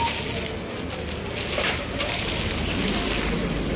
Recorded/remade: recorded